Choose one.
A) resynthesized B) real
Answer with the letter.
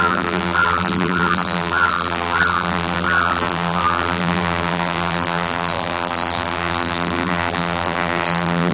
A